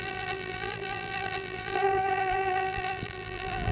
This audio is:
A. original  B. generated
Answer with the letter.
B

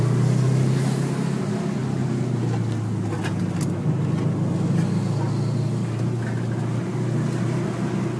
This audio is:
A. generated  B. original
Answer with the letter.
B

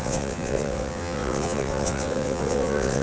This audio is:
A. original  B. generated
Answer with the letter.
B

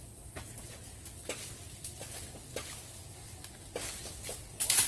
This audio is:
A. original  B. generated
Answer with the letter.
A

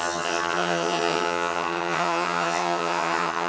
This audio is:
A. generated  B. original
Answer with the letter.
A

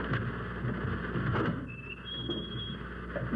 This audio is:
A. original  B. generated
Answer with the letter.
A